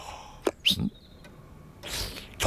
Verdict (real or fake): real